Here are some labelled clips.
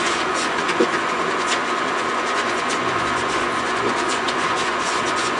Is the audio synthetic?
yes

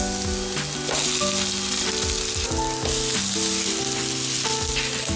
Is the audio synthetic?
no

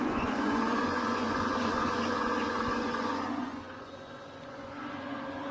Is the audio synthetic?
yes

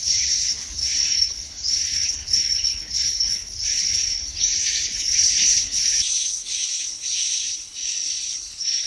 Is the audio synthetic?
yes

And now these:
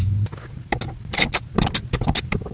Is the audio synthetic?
no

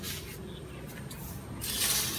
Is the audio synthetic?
no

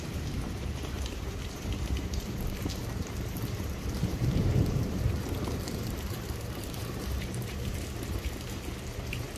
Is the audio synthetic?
yes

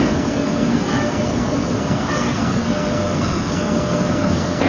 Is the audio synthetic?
yes